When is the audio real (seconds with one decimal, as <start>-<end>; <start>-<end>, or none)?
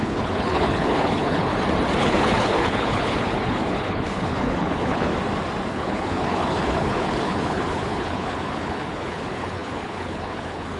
1.5-2.0; 5.1-5.7